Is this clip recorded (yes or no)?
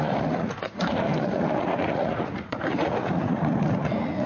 no